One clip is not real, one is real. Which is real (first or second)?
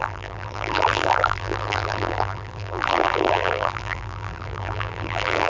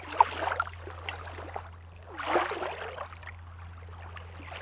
second